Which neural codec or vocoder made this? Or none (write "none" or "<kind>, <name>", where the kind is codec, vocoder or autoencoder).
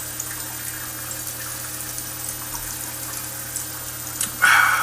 none